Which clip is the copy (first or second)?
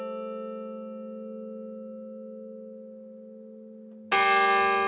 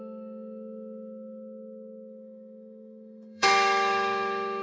second